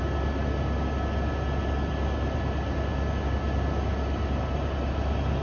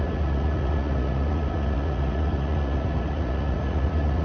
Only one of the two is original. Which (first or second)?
first